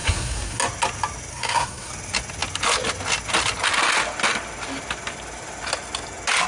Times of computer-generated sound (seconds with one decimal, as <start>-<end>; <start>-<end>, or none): 0.0-0.6; 1.3-1.9